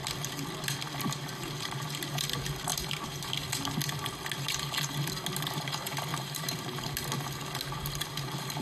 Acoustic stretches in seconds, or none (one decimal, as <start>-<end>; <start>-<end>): 0.0-2.7; 3.3-6.1; 6.8-8.6